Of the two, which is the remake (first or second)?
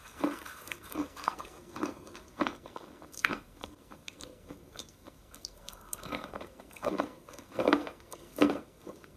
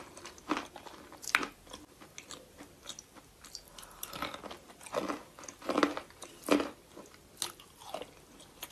first